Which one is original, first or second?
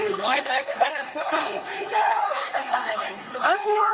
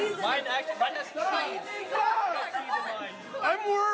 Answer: second